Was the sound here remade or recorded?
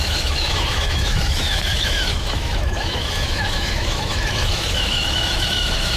remade